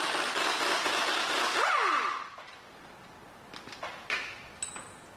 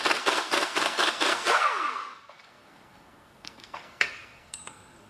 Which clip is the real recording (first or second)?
first